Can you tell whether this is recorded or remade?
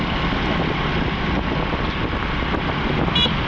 recorded